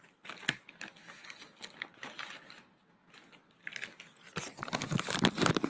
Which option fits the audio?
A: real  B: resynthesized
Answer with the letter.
A